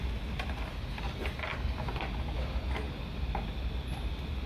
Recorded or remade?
recorded